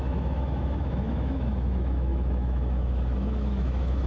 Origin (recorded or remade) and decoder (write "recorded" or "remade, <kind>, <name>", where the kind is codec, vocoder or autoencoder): remade, autoencoder, DAC-VAE